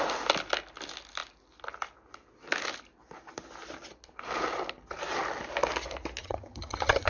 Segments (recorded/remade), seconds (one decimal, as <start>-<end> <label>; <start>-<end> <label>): 0.0-6.2 recorded; 6.2-7.1 remade